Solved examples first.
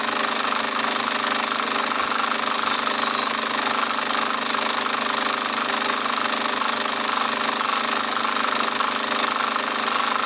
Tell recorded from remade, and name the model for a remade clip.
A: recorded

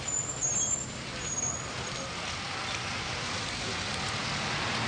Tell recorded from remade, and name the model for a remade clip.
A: recorded